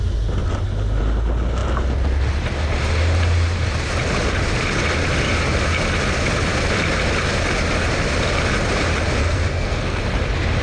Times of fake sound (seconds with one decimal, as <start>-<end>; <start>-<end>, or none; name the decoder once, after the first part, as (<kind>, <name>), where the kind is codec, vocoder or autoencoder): 9.2-10.0 (codec, SNAC)